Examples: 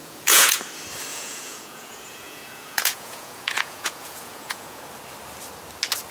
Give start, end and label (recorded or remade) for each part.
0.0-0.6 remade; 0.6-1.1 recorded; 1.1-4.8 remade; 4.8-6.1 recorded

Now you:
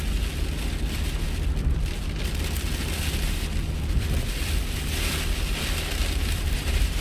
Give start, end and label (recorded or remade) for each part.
0.0-6.0 recorded; 6.0-7.0 remade

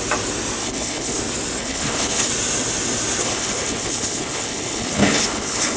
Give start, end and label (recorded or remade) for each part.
0.0-0.6 recorded; 0.6-1.2 remade; 1.2-1.6 recorded; 1.6-2.3 remade; 2.3-3.2 recorded; 3.2-5.8 remade

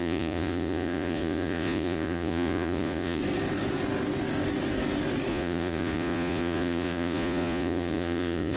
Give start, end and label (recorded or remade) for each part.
0.0-3.2 remade; 3.2-5.3 recorded; 5.3-8.6 remade

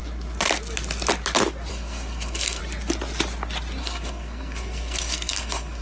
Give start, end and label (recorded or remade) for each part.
0.0-1.7 recorded; 1.7-2.6 remade; 2.6-3.8 recorded; 3.8-5.8 remade